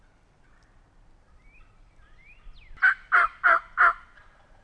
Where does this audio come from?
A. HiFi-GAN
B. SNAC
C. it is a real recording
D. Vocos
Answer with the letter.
C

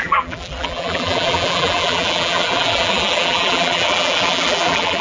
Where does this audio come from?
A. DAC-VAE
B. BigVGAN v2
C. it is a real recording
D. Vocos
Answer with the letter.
B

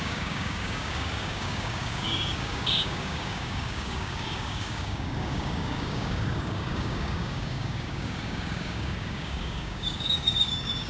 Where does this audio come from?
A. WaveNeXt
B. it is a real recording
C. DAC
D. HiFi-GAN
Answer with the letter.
C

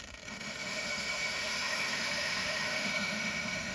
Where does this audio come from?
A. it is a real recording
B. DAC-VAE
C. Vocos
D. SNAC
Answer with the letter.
B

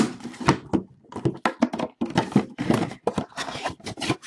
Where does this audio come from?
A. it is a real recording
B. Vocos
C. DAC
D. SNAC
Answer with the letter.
A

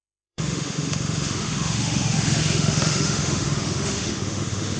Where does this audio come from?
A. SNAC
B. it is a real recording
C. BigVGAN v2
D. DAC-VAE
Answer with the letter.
D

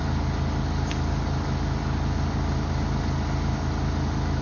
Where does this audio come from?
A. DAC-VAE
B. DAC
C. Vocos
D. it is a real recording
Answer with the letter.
D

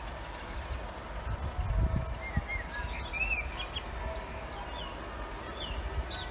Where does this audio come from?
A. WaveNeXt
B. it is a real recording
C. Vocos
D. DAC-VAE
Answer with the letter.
B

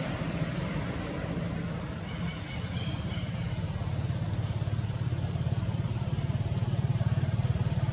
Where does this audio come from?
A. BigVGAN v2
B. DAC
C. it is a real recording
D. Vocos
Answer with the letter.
A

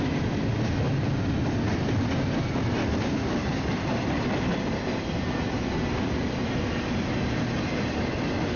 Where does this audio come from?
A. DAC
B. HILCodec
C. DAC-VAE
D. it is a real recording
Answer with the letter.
D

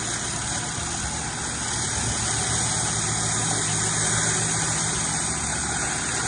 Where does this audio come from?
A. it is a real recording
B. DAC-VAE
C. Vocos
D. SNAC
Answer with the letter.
A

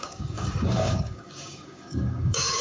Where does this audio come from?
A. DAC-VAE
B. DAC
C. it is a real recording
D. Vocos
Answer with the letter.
B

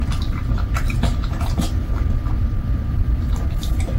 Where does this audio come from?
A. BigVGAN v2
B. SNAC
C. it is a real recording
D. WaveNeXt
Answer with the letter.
A